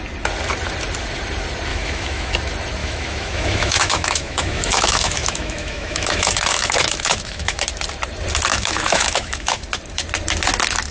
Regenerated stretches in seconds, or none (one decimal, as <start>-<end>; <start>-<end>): 1.7-2.3; 2.8-7.6; 8.5-9.6